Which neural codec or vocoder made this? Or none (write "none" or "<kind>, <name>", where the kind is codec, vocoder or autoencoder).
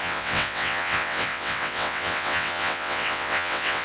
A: vocoder, WaveNeXt